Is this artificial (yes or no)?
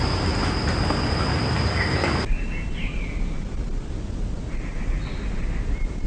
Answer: no